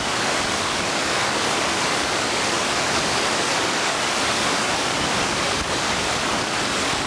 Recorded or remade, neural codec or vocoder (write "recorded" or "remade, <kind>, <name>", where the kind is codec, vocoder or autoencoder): remade, codec, DAC